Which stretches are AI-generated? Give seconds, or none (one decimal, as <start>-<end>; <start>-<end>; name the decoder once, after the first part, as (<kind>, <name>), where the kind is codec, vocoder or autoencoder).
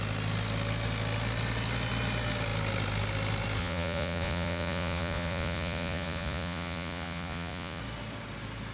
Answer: 3.6-7.8 (vocoder, Vocos)